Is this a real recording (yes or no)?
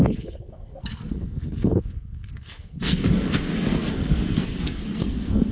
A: no